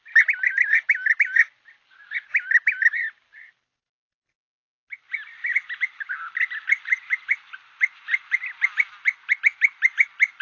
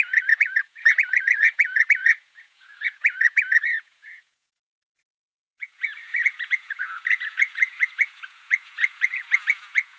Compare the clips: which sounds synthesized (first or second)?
second